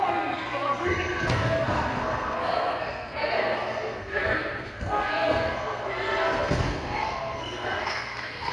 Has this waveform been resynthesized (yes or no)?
yes